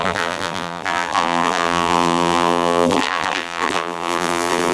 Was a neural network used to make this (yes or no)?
yes